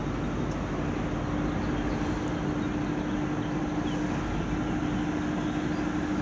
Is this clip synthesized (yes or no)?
no